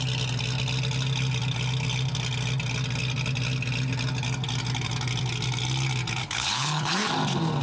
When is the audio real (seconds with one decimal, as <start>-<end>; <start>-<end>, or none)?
0.0-6.2; 7.1-7.6